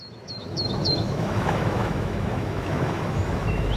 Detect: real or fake fake